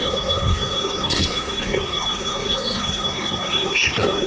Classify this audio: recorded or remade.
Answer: remade